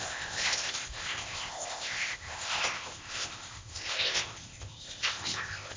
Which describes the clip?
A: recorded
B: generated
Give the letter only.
B